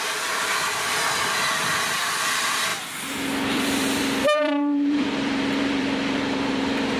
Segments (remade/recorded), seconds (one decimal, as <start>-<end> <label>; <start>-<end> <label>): 0.0-7.0 remade